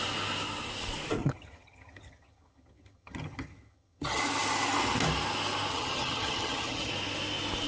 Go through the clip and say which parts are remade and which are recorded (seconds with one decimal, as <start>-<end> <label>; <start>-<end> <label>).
0.0-1.2 recorded; 1.2-4.2 remade; 4.2-5.7 recorded; 5.7-6.9 remade; 6.9-7.7 recorded